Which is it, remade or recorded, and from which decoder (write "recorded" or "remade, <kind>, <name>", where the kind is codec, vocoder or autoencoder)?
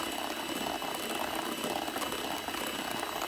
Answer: recorded